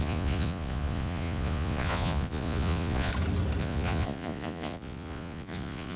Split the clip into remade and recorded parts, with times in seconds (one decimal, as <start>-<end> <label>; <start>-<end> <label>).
0.0-3.1 remade; 3.1-3.6 recorded; 3.6-6.0 remade